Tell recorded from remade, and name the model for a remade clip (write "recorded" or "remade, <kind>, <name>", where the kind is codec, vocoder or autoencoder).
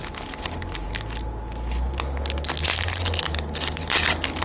recorded